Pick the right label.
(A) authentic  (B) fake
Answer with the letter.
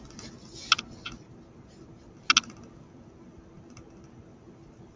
A